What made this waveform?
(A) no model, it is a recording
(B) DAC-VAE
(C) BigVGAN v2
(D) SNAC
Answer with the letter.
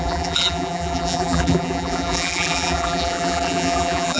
C